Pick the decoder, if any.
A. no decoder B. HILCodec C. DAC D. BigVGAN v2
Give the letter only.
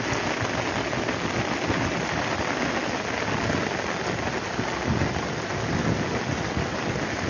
A